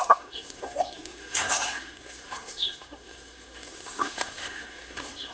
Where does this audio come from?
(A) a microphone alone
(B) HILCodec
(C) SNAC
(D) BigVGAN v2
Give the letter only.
C